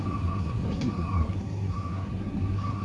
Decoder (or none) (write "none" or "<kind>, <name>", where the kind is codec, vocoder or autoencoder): codec, SNAC